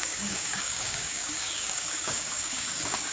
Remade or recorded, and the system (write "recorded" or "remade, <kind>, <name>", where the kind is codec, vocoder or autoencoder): remade, codec, DAC